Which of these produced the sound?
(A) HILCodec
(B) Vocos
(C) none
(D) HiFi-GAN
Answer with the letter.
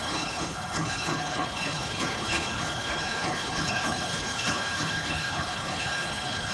A